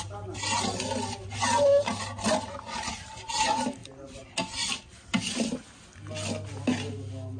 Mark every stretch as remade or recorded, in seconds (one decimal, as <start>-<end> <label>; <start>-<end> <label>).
0.0-7.4 recorded